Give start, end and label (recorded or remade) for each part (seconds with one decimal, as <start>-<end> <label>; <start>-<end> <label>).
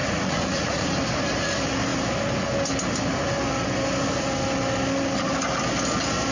0.0-0.9 remade; 0.9-6.3 recorded